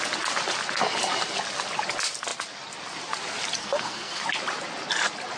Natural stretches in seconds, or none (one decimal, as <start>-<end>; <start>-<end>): 0.0-3.6; 4.2-5.4

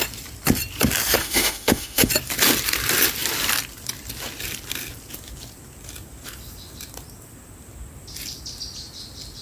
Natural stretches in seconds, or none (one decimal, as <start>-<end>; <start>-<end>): 0.0-1.2; 2.1-9.4

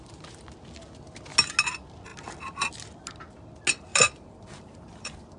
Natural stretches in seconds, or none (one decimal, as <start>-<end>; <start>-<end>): 0.0-3.9